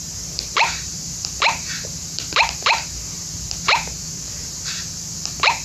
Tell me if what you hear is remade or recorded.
remade